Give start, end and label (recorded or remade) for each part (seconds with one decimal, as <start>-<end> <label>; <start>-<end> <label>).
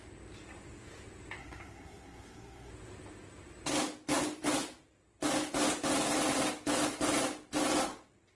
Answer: 0.0-1.4 recorded; 1.4-2.7 remade; 2.7-8.3 recorded